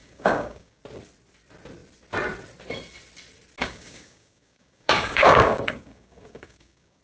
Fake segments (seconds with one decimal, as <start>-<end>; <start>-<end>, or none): 0.0-0.8; 3.6-7.0